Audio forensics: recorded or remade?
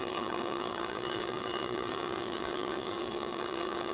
remade